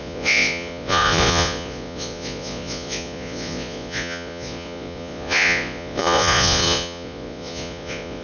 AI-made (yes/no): yes